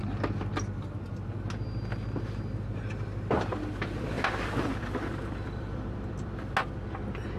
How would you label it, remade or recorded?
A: recorded